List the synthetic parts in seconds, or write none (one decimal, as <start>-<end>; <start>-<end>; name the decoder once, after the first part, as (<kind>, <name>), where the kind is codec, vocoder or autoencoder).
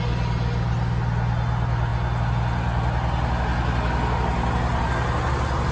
none